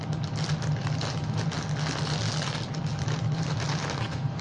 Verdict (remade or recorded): recorded